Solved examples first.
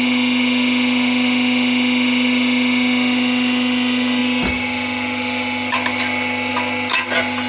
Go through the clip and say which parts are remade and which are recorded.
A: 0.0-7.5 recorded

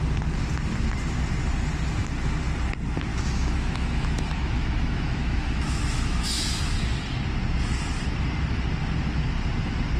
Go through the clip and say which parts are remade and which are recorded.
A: 0.0-3.1 recorded; 3.1-6.5 remade; 6.5-10.0 recorded

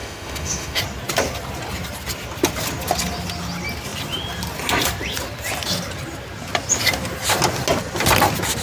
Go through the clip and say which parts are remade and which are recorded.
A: 0.0-0.8 remade; 0.8-8.6 recorded

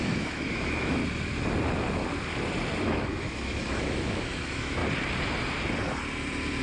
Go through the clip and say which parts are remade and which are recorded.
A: 0.0-1.0 remade; 1.0-2.8 recorded; 2.8-4.8 remade; 4.8-6.6 recorded

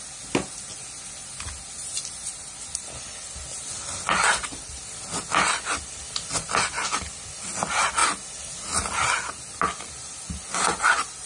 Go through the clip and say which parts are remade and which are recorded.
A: 0.0-11.3 recorded

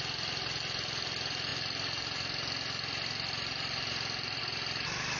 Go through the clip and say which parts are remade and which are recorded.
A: 0.0-5.2 recorded